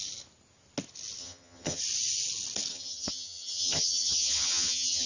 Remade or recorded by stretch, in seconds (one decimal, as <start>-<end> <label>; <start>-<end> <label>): 0.0-1.2 recorded; 1.2-1.8 remade; 1.8-2.7 recorded; 2.7-5.1 remade